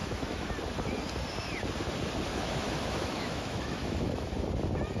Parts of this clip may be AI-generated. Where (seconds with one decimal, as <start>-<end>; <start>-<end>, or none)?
0.0-0.5; 2.3-4.3